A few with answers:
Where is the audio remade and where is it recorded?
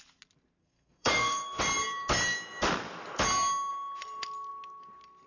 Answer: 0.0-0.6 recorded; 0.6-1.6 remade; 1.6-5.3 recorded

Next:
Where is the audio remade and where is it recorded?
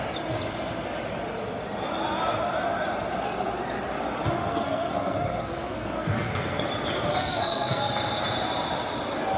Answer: 0.0-4.5 recorded; 4.5-6.6 remade; 6.6-7.2 recorded; 7.2-7.9 remade; 7.9-9.4 recorded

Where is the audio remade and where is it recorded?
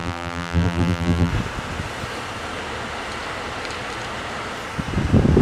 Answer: 0.0-1.3 remade; 1.3-5.4 recorded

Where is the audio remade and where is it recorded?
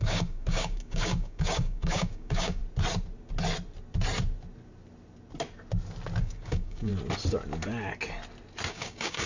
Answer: 0.0-2.6 remade; 2.6-6.2 recorded; 6.2-6.9 remade; 6.9-8.7 recorded; 8.7-9.3 remade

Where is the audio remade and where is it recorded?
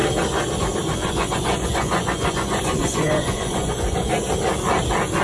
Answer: 0.0-1.0 recorded; 1.0-4.1 remade; 4.1-5.2 recorded